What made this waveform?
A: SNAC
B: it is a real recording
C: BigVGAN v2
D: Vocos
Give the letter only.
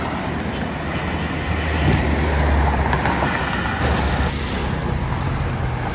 B